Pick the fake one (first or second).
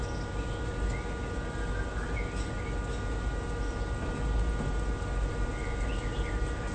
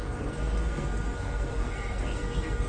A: second